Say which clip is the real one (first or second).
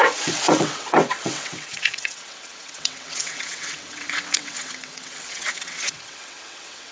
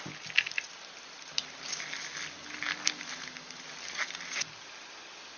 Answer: second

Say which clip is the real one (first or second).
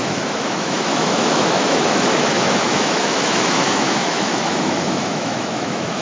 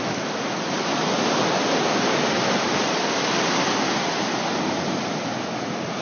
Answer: second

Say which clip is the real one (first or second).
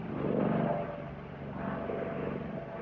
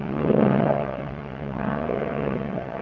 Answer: first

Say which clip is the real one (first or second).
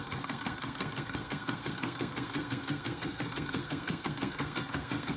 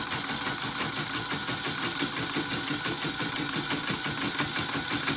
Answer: second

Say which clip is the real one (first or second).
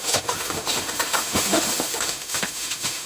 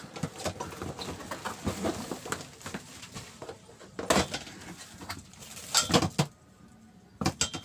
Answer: second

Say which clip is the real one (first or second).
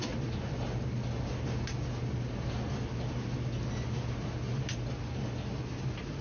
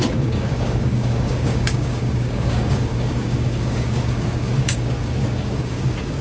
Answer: first